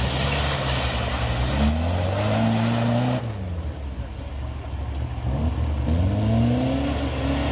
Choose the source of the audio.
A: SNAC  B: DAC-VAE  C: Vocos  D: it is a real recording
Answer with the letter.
D